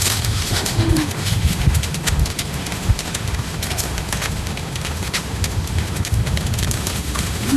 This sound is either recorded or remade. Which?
remade